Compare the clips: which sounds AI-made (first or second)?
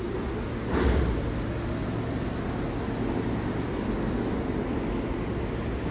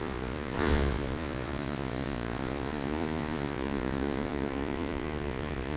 second